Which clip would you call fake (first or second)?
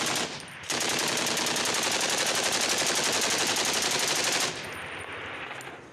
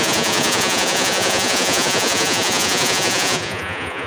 second